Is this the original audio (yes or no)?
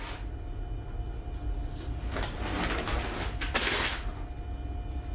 yes